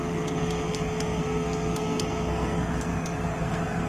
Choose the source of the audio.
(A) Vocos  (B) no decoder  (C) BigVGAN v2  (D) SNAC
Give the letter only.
D